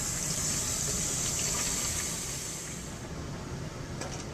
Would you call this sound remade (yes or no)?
yes